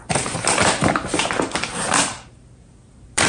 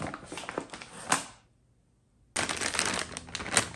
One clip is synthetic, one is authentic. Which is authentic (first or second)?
second